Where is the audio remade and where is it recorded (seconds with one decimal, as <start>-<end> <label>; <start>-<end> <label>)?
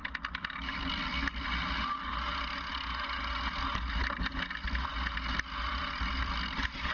0.0-1.7 remade; 1.7-6.9 recorded